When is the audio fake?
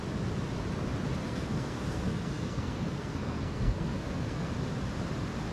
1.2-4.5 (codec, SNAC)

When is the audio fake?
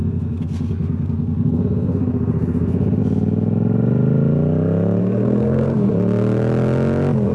0.0-3.0 (codec, SNAC); 5.0-5.9